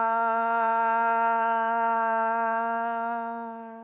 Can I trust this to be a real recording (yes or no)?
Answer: no